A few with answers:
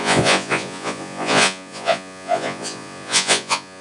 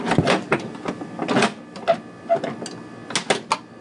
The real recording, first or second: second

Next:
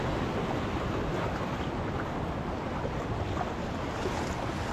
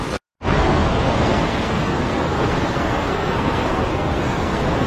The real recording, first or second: first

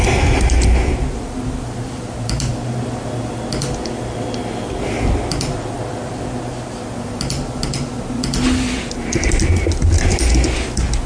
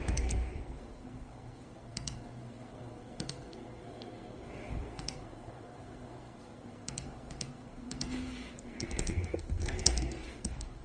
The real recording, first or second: first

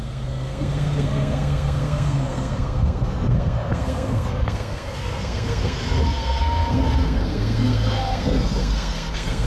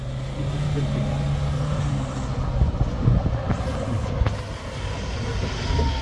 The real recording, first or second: second